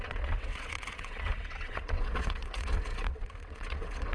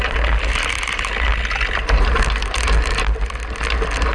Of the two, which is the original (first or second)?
second